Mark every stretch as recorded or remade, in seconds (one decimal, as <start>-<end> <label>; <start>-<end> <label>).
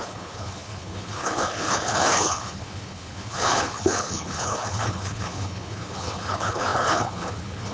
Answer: 0.0-7.7 remade